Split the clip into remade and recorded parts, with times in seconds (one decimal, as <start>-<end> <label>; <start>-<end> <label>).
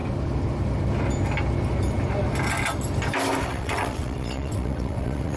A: 0.0-3.4 recorded; 3.4-5.4 remade